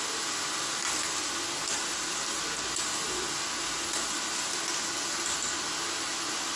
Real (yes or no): yes